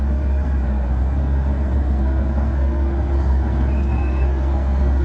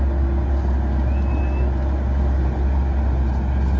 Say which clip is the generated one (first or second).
first